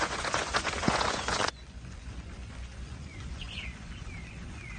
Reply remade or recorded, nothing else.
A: remade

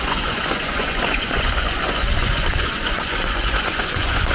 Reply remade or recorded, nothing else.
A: remade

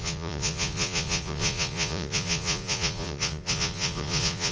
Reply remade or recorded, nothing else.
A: remade